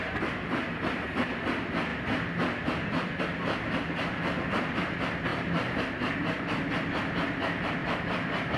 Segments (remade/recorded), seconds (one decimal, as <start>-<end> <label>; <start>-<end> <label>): 0.0-5.3 recorded; 5.3-6.4 remade; 6.4-7.8 recorded; 7.8-8.6 remade